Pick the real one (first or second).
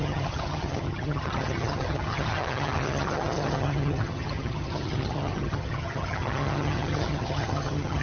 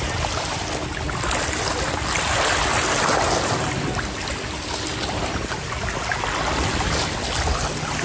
second